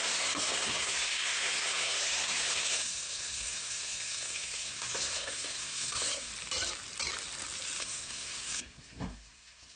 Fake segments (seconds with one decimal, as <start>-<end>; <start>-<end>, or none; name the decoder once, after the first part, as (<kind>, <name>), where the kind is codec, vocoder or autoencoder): 0.0-6.3 (codec, SNAC); 7.8-9.8